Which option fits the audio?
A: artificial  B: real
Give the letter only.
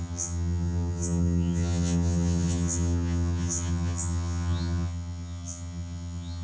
A